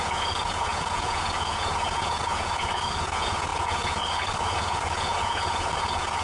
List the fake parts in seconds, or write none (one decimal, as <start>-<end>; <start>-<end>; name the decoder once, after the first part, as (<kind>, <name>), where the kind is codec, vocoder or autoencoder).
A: 0.0-6.2 (vocoder, Vocos)